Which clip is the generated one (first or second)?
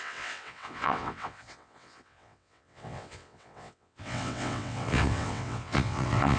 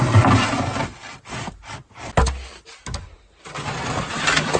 first